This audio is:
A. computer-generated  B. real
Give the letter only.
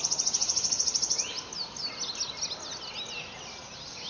B